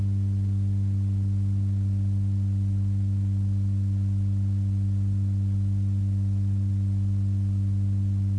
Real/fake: real